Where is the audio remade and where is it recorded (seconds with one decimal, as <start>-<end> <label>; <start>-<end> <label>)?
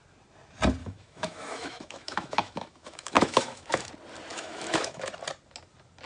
0.0-0.8 recorded; 0.8-3.9 remade; 3.9-4.3 recorded; 4.3-5.1 remade; 5.1-6.1 recorded